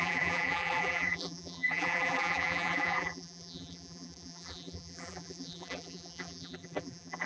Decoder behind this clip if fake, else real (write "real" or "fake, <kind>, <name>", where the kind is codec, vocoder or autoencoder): fake, vocoder, BigVGAN v2